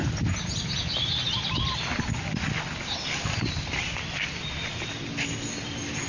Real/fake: real